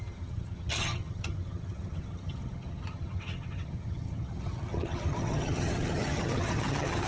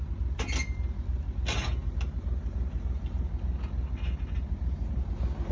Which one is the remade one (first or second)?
first